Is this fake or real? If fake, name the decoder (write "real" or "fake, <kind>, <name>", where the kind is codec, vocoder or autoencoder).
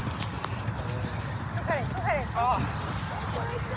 real